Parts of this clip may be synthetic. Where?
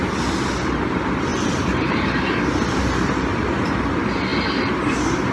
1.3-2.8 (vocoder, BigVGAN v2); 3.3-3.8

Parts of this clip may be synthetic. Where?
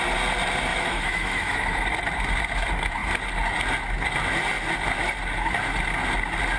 0.7-1.9 (autoencoder, DAC-VAE)